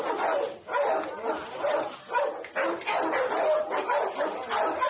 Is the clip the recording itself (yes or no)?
yes